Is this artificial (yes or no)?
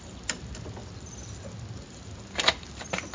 no